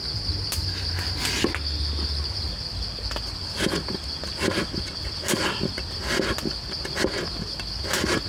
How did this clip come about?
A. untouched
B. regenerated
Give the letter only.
A